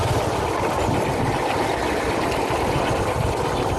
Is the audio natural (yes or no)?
yes